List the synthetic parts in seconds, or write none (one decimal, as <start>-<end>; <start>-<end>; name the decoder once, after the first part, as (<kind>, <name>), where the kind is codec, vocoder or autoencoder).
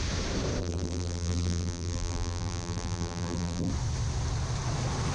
0.6-3.7 (vocoder, BigVGAN v2)